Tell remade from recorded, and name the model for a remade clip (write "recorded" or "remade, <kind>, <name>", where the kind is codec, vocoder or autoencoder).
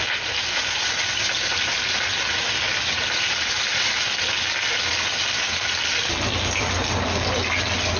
recorded